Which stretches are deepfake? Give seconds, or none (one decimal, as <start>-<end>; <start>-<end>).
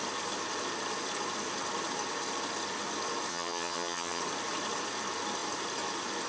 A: 3.3-4.2